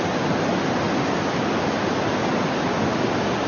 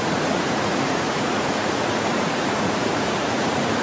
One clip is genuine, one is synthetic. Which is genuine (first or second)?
first